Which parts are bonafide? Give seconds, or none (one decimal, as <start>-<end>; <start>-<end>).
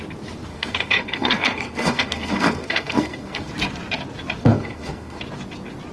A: 0.0-0.5; 3.5-4.4; 5.2-5.9